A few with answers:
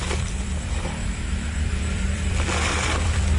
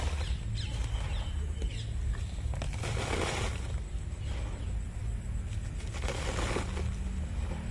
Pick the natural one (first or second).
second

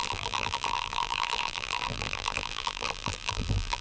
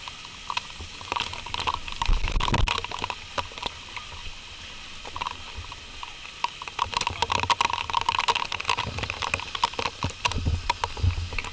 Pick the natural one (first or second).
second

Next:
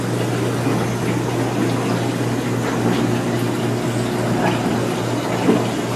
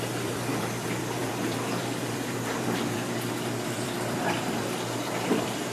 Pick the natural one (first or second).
first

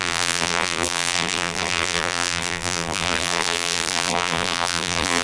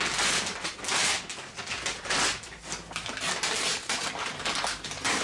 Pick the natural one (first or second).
second